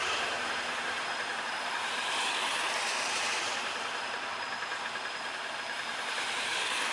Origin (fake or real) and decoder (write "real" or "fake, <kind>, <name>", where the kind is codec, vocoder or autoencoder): fake, vocoder, BigVGAN v2